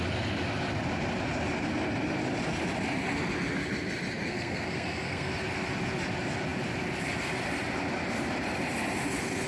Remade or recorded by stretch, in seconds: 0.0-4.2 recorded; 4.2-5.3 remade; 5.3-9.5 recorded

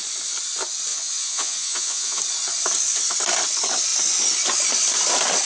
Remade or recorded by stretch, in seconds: 0.0-0.9 recorded; 0.9-2.2 remade; 2.2-5.4 recorded

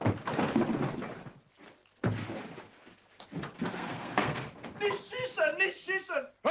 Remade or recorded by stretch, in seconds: 0.0-3.7 recorded; 3.7-4.5 remade; 4.5-6.5 recorded